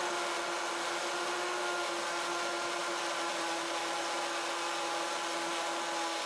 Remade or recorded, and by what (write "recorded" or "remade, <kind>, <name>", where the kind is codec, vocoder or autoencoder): recorded